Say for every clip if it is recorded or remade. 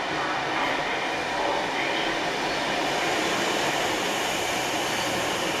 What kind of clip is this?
recorded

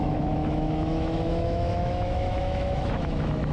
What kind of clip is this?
remade